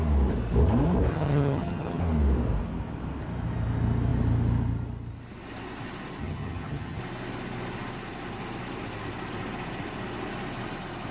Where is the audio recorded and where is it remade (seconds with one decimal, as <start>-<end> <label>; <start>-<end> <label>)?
0.0-1.1 recorded; 1.1-2.0 remade; 2.0-6.2 recorded; 6.2-7.0 remade; 7.0-11.1 recorded